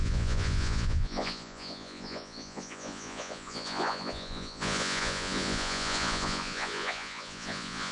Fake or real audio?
fake